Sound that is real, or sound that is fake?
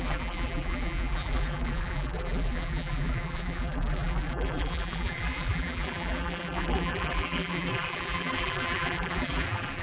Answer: fake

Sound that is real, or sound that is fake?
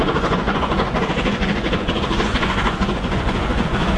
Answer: fake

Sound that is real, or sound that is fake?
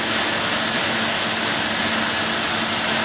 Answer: real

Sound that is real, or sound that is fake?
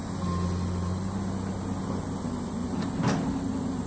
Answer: real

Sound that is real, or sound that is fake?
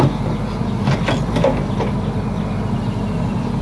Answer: real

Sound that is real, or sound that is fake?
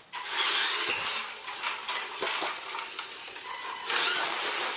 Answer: real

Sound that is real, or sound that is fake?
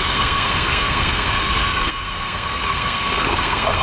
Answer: fake